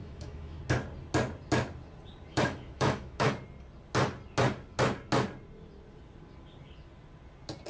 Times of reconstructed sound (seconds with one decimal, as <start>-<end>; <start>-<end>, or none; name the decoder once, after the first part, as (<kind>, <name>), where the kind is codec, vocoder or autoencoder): 0.0-0.6 (autoencoder, DAC-VAE); 2.3-3.3